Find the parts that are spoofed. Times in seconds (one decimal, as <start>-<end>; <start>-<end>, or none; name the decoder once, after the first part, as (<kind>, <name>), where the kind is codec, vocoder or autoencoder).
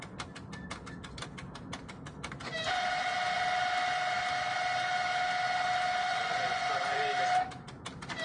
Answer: 6.1-7.0 (vocoder, Vocos)